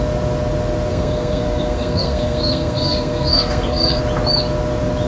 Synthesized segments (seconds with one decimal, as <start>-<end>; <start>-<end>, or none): 0.9-4.0